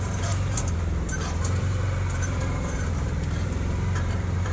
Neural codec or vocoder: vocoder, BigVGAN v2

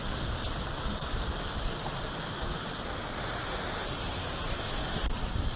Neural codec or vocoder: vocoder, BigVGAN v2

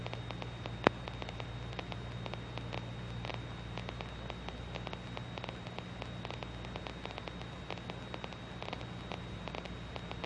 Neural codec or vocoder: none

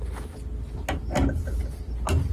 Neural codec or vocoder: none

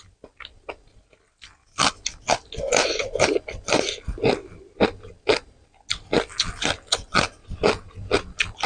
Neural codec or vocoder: none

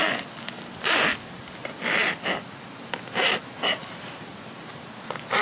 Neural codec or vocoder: none